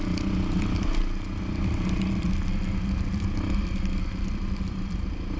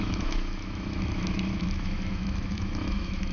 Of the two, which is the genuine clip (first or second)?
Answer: first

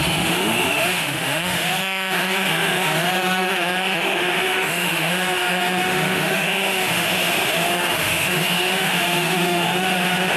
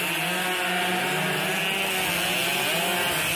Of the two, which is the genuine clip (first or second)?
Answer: second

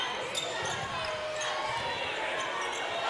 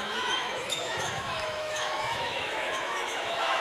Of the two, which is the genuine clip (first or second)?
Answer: first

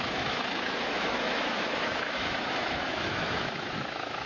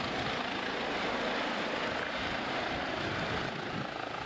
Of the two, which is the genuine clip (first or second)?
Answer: second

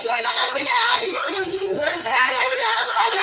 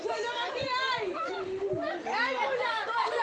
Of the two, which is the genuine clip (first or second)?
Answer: second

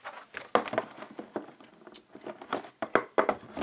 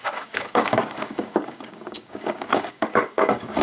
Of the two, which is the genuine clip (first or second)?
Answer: first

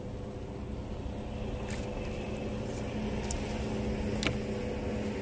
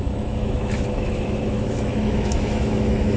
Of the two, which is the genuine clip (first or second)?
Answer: first